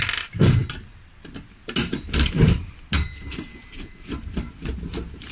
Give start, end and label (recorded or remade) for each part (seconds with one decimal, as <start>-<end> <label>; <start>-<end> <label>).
0.0-3.6 recorded; 3.6-4.2 remade; 4.2-5.3 recorded